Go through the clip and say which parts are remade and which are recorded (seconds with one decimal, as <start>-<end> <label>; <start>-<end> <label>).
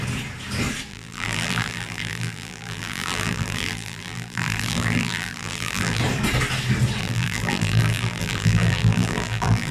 0.0-0.9 recorded; 0.9-6.0 remade; 6.0-7.0 recorded; 7.0-9.7 remade